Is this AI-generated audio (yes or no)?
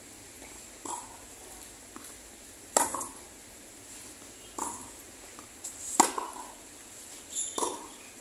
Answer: no